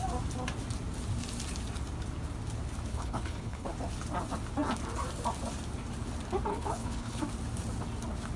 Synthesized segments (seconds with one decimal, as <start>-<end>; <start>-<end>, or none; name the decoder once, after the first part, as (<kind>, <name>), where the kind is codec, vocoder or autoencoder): 2.9-3.7 (codec, HILCodec); 6.5-7.2